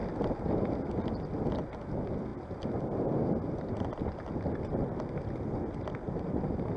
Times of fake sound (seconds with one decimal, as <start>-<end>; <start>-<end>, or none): none